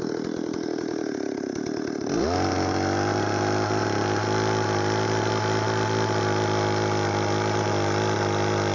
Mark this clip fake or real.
fake